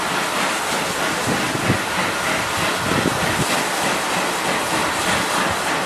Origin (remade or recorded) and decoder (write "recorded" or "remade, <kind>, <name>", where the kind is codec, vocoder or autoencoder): recorded